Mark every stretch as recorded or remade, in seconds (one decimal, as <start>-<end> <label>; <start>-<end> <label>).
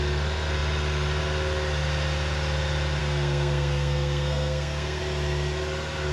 0.0-3.0 recorded; 3.0-5.0 remade; 5.0-6.1 recorded